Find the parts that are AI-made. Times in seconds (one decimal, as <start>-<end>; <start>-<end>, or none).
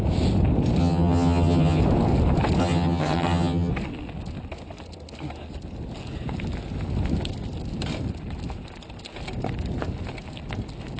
0.8-1.8; 2.6-3.7